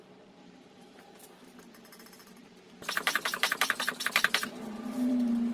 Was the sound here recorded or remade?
remade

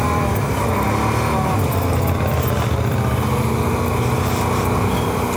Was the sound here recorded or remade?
recorded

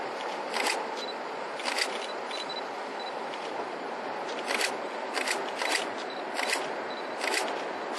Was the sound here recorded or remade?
recorded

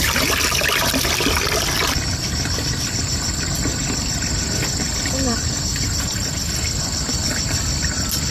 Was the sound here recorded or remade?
remade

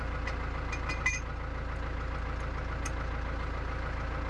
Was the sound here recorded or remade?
recorded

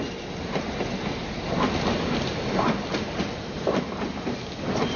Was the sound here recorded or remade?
recorded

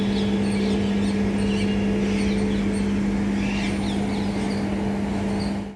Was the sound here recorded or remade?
recorded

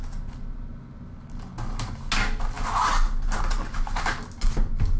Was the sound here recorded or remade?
recorded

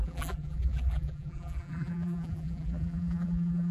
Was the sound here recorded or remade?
remade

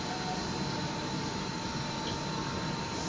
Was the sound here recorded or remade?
recorded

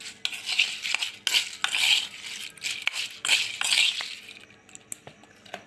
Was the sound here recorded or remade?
recorded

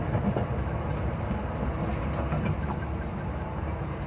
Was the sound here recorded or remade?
recorded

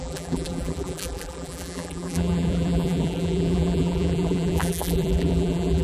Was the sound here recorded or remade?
remade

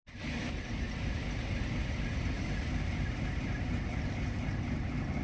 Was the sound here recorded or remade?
recorded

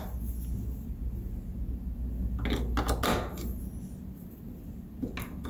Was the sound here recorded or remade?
recorded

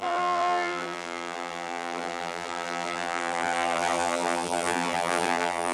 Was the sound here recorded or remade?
remade